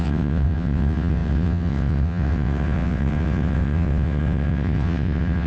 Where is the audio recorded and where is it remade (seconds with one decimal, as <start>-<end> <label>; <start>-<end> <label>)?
0.0-5.5 remade